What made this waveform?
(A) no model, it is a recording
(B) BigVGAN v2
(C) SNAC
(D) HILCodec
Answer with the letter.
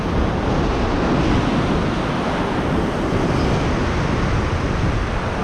A